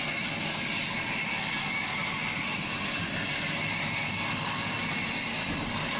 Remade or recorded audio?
recorded